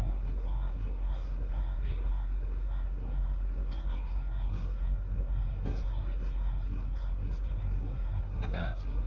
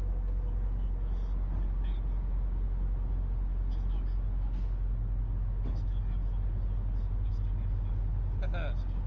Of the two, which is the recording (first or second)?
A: second